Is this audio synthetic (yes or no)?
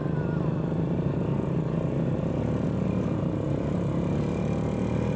no